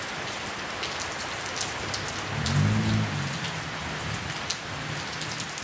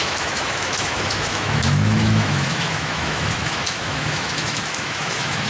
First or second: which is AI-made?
second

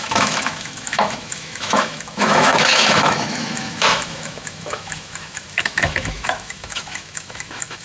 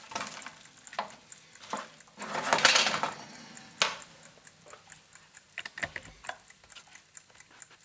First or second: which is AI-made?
first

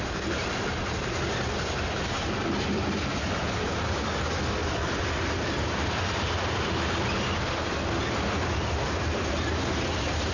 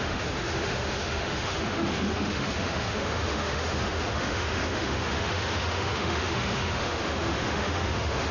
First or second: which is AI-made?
second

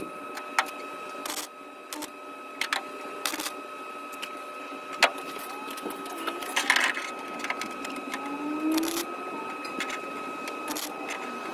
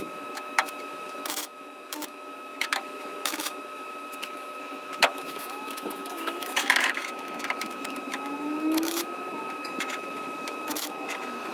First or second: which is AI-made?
second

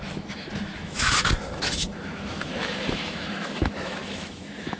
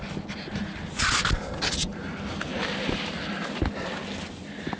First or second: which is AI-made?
first